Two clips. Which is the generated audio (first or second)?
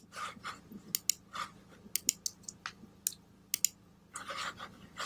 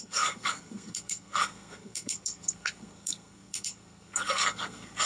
second